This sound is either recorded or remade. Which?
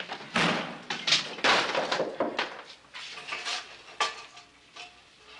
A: recorded